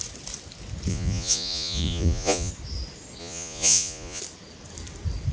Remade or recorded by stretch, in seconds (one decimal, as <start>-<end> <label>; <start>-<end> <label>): 0.0-0.9 recorded; 0.9-2.5 remade; 2.5-3.2 recorded; 3.2-4.2 remade; 4.2-5.3 recorded